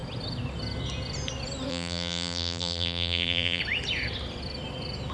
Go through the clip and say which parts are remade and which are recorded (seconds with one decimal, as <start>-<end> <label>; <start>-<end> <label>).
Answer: 0.0-1.7 recorded; 1.7-3.6 remade; 3.6-5.1 recorded